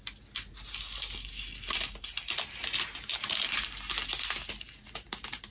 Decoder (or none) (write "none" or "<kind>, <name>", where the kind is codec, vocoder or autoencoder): none